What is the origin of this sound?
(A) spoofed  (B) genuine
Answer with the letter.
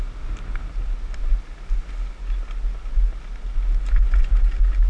B